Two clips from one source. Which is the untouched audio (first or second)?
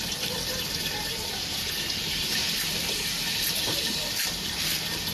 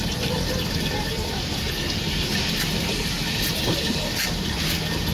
second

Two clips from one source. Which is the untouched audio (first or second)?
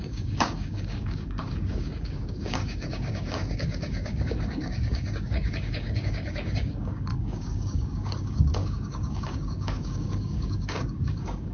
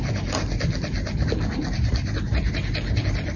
second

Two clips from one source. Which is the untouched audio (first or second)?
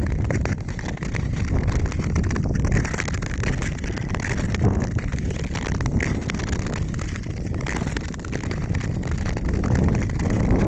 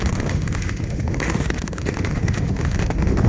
first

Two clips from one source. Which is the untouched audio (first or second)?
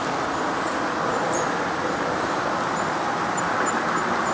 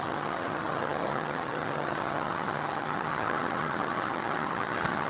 first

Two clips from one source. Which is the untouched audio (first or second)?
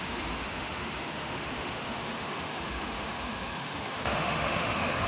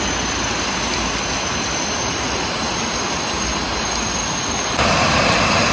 second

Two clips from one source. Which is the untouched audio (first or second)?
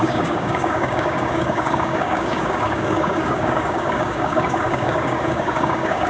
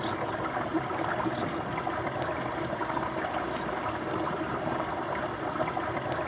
second